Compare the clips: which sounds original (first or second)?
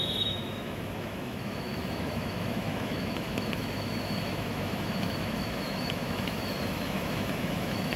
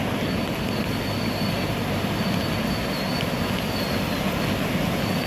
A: second